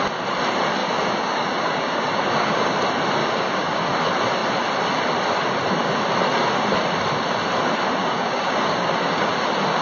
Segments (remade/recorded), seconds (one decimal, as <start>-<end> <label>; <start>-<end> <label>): 0.0-0.8 recorded; 0.8-2.7 remade; 2.7-3.2 recorded; 3.2-4.0 remade; 4.0-8.0 recorded; 8.0-9.3 remade; 9.3-9.8 recorded